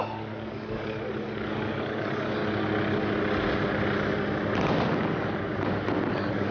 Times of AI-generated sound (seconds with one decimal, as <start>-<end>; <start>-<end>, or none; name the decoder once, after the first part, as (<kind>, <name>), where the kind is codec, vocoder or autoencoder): 0.0-2.4 (codec, DAC); 6.1-6.5

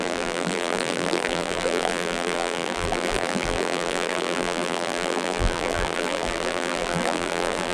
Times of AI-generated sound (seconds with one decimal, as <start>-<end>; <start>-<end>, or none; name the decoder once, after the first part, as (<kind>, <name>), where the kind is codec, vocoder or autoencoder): 0.0-7.7 (vocoder, BigVGAN v2)

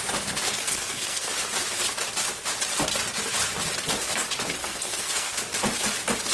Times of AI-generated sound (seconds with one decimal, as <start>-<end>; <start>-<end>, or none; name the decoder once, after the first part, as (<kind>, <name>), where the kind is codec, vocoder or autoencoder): 0.5-1.3 (codec, SNAC); 4.6-5.5

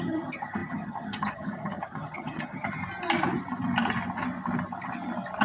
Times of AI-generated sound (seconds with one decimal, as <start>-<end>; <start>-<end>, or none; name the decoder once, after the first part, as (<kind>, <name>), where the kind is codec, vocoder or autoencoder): 0.0-2.8 (vocoder, HiFi-GAN)

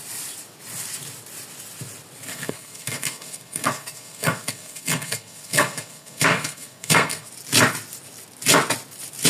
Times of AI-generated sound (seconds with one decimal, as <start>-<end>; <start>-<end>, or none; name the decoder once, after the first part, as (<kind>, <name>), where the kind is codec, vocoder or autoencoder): 2.3-7.3 (codec, SNAC)

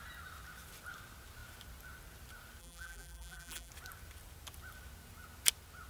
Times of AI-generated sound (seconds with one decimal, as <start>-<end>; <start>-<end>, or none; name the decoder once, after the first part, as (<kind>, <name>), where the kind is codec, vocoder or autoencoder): 2.6-3.7 (vocoder, BigVGAN v2)

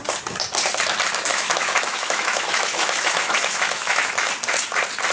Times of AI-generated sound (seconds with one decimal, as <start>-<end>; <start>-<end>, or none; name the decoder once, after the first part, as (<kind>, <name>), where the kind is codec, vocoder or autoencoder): 1.3-4.3 (autoencoder, DAC-VAE)

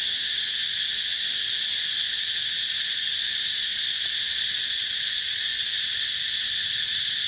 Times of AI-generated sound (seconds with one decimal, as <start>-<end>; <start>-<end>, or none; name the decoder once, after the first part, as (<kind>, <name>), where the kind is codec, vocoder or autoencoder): 0.0-0.6 (vocoder, BigVGAN v2); 2.3-3.7; 4.7-7.3